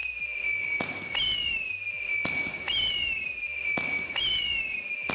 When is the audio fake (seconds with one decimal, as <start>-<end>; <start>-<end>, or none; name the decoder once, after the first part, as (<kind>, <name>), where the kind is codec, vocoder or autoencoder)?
none